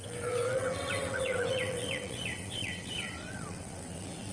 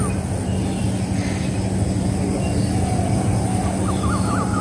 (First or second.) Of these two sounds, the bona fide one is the second